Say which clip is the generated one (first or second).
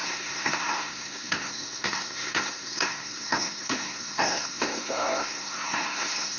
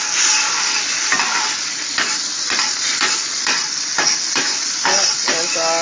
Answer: first